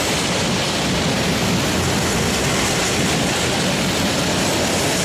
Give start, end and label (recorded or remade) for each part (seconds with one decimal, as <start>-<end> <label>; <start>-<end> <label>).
0.0-5.0 recorded